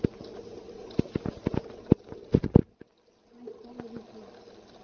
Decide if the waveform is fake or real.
real